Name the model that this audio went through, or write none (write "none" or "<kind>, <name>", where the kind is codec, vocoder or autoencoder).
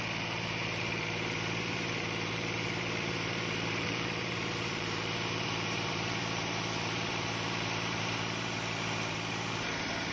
vocoder, BigVGAN v2